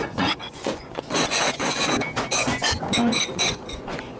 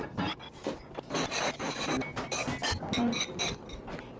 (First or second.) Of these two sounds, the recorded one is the second